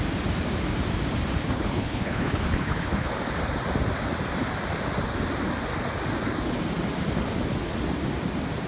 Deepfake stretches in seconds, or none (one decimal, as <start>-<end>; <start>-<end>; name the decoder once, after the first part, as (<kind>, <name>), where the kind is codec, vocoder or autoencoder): 1.4-3.1 (codec, HILCodec)